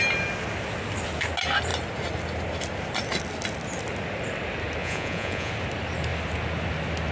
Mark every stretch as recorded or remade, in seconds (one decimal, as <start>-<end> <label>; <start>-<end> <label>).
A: 0.0-4.8 recorded; 4.8-5.5 remade; 5.5-7.1 recorded

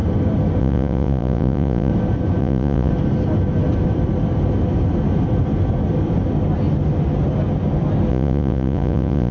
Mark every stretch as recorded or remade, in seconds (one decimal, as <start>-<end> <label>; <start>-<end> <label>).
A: 0.0-0.6 recorded; 0.6-1.9 remade; 1.9-2.4 recorded; 2.4-2.9 remade; 2.9-8.1 recorded; 8.1-9.3 remade

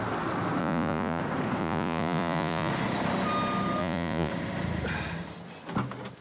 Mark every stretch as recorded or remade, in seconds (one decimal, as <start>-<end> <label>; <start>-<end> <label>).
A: 0.0-0.6 recorded; 0.6-1.2 remade; 1.2-1.6 recorded; 1.6-2.7 remade; 2.7-3.8 recorded; 3.8-4.3 remade; 4.3-6.2 recorded

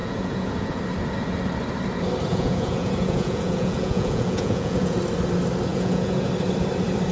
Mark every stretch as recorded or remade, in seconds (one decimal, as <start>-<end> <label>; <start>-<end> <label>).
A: 0.0-0.8 remade; 0.8-2.3 recorded; 2.3-5.0 remade; 5.0-5.7 recorded; 5.7-6.3 remade; 6.3-7.1 recorded

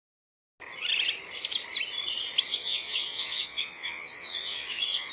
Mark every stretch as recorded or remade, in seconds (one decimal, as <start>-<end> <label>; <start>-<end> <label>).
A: 0.0-2.5 recorded; 2.5-5.1 remade

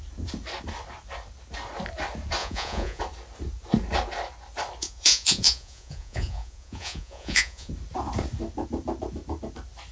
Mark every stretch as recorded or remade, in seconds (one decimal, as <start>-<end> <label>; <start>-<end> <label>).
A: 0.0-2.4 recorded; 2.4-3.0 remade; 3.0-4.8 recorded; 4.8-7.7 remade; 7.7-9.9 recorded

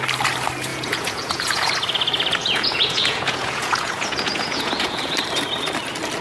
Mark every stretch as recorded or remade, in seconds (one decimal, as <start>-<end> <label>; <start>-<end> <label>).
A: 0.0-0.7 recorded; 0.7-1.7 remade; 1.7-2.4 recorded; 2.4-5.1 remade; 5.1-6.2 recorded

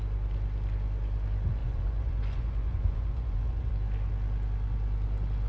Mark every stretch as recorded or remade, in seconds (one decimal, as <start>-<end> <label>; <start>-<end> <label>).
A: 0.0-1.6 recorded; 1.6-3.7 remade; 3.7-5.5 recorded